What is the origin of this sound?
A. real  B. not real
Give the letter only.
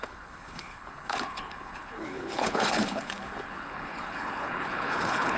B